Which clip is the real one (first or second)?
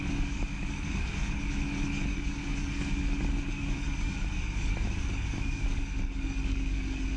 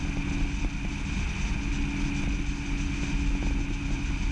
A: second